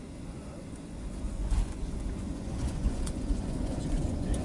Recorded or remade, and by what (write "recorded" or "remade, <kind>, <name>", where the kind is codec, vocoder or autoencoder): remade, vocoder, Vocos